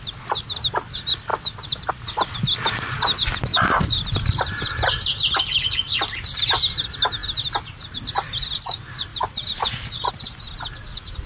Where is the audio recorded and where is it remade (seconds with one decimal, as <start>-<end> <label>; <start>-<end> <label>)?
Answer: 0.0-3.5 recorded; 3.5-4.9 remade; 4.9-9.1 recorded; 9.1-10.1 remade; 10.1-11.3 recorded